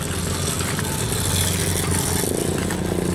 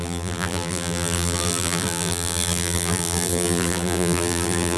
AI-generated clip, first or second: second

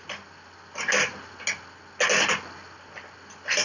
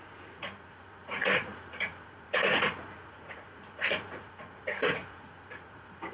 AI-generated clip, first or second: second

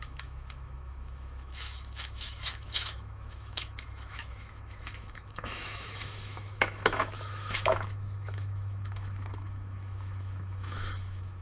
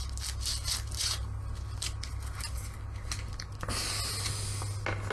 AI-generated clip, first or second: first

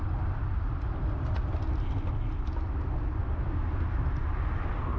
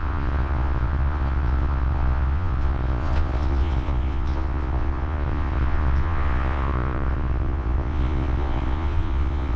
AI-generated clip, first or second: second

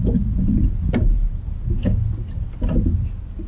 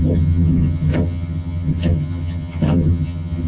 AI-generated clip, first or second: second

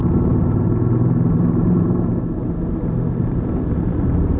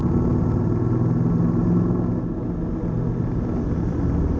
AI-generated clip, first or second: first